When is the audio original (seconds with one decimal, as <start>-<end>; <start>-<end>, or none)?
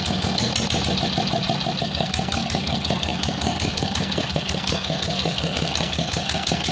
0.5-1.8